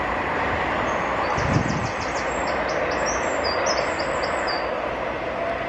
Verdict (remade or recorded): recorded